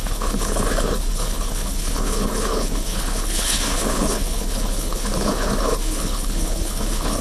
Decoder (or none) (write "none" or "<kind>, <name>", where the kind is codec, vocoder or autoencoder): codec, HILCodec